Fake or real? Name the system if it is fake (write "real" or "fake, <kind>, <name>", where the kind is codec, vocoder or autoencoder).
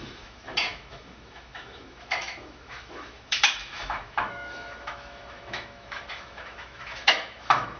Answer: fake, autoencoder, DAC-VAE